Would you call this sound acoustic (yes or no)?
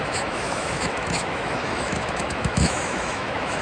no